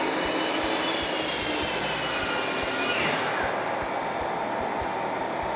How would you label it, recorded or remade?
recorded